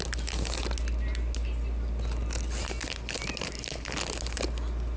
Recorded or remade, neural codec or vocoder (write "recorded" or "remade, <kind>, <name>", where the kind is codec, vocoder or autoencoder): recorded